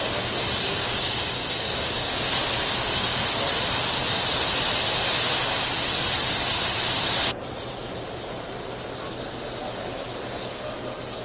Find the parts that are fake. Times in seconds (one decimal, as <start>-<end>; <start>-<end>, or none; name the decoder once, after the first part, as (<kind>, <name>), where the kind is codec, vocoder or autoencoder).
0.7-2.1 (codec, DAC)